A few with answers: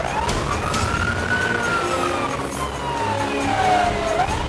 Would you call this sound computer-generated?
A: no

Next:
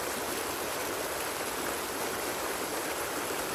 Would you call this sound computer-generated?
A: no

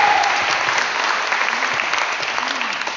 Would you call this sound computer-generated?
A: no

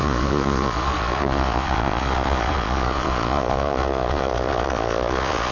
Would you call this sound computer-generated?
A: yes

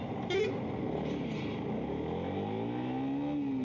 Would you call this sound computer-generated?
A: no